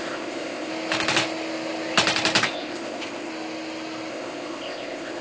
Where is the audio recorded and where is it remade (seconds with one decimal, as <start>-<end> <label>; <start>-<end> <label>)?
0.0-0.7 remade; 0.7-2.4 recorded; 2.4-3.3 remade; 3.3-4.1 recorded; 4.1-5.2 remade